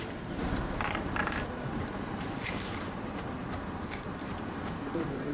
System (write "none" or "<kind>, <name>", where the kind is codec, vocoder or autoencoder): vocoder, BigVGAN v2